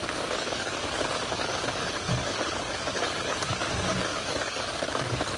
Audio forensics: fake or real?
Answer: fake